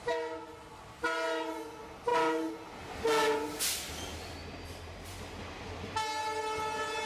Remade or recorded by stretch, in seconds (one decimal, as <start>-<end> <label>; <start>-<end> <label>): 0.0-7.1 recorded